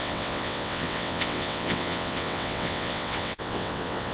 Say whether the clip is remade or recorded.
remade